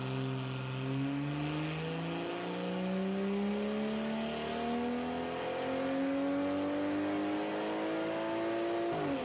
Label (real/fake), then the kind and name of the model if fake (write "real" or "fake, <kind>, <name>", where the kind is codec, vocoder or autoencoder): real